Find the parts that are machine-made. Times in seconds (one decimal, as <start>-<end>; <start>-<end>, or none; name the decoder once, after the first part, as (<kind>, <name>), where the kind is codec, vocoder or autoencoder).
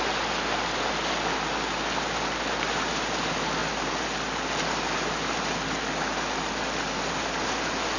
none